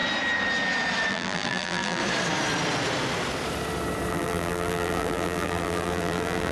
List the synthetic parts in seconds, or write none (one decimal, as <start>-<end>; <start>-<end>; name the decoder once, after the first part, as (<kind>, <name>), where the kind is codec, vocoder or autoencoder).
1.1-2.0 (vocoder, BigVGAN v2); 4.1-6.5